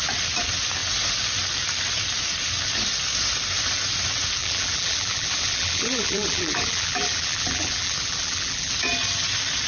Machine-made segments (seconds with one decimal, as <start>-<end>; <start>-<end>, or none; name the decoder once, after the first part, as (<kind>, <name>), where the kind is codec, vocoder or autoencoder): 4.4-8.7 (vocoder, BigVGAN v2)